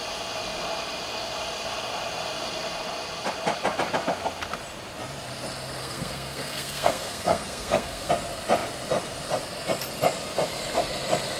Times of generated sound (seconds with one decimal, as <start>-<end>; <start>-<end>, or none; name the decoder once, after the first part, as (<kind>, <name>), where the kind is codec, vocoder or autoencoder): 5.8-8.1 (codec, SNAC)